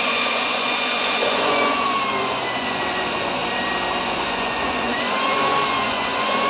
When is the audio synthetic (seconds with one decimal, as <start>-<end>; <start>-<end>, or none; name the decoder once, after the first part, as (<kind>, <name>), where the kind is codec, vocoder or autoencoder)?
0.0-3.4 (vocoder, Vocos); 4.0-6.5